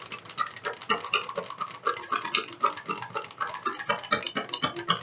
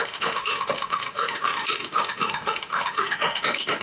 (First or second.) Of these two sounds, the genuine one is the first